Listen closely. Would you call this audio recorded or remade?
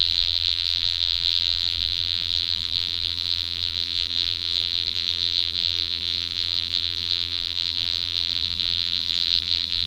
remade